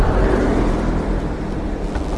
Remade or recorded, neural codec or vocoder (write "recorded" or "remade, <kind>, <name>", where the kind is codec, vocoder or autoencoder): recorded